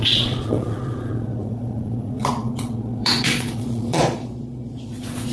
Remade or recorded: remade